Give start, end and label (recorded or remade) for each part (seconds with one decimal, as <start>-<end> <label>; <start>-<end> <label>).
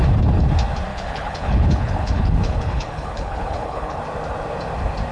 0.0-0.9 recorded; 0.9-4.0 remade; 4.0-5.1 recorded